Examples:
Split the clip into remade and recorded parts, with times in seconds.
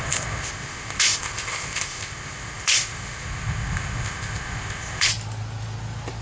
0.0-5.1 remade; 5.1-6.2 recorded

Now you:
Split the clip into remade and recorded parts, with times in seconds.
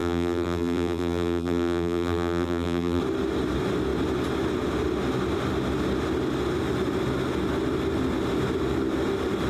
0.0-3.0 remade; 3.0-9.5 recorded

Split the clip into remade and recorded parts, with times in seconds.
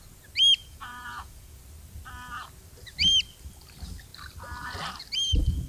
0.0-0.6 recorded; 0.6-1.6 remade; 1.6-5.7 recorded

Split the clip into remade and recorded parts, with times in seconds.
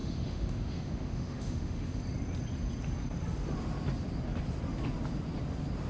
0.0-2.0 remade; 2.0-5.9 recorded